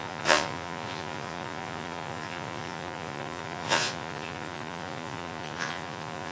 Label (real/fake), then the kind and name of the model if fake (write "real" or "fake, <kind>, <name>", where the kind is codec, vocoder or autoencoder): fake, vocoder, Vocos